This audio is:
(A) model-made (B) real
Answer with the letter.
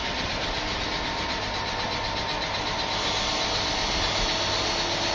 B